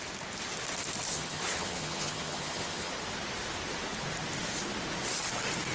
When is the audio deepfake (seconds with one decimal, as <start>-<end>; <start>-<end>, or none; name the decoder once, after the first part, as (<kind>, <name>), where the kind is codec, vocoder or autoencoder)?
1.1-2.9 (vocoder, HiFi-GAN)

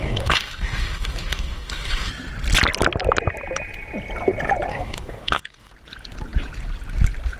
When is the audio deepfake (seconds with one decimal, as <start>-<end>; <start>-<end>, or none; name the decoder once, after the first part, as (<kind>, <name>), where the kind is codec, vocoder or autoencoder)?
0.0-2.1 (codec, DAC); 4.7-5.7

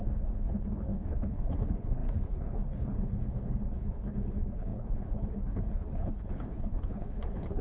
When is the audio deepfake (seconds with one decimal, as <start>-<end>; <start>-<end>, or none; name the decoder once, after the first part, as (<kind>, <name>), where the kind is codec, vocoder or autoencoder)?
0.0-7.6 (codec, HILCodec)

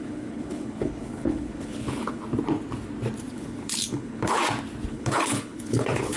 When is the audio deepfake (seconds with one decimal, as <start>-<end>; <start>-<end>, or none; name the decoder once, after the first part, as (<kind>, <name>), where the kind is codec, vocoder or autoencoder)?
0.0-2.2 (codec, HILCodec); 3.3-4.4; 4.9-6.2

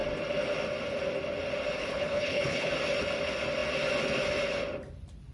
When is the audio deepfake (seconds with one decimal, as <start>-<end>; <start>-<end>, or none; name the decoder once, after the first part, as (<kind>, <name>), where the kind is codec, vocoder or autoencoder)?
1.8-2.7 (codec, HILCodec)

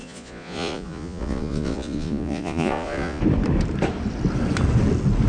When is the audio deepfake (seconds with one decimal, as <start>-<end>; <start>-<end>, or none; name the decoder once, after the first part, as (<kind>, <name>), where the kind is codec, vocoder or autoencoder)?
0.0-3.2 (vocoder, Vocos)

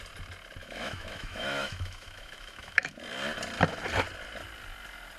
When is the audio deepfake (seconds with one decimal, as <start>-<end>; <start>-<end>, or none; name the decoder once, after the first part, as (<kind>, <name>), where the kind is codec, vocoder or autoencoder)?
0.6-3.0 (autoencoder, DAC-VAE)